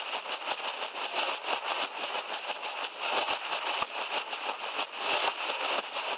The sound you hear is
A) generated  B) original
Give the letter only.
B